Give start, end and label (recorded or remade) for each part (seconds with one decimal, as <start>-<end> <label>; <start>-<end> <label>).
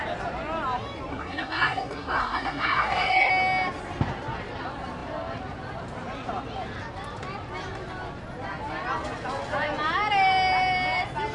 0.0-1.1 recorded; 1.1-3.3 remade; 3.3-11.3 recorded